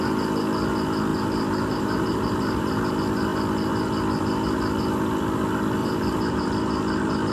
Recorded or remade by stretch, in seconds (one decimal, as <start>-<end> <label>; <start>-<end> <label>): 0.0-1.1 recorded; 1.1-2.9 remade; 2.9-5.8 recorded; 5.8-6.5 remade; 6.5-7.3 recorded